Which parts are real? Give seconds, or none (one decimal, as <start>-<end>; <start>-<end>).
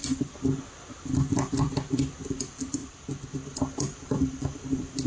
0.0-1.6